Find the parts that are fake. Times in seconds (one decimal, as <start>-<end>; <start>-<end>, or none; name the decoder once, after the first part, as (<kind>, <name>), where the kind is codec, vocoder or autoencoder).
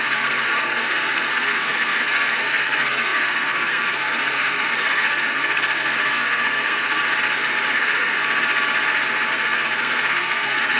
0.0-7.0 (codec, SNAC); 7.7-8.2; 9.3-10.8